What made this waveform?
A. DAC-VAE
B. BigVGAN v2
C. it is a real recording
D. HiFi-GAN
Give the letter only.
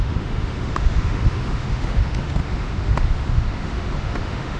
A